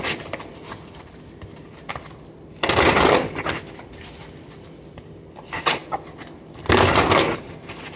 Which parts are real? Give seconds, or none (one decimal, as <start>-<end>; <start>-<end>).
0.0-8.0